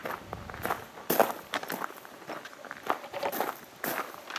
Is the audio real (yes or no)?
yes